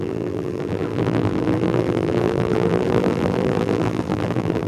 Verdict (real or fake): fake